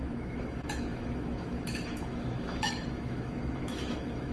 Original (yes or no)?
no